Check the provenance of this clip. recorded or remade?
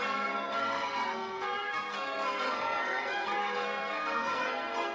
remade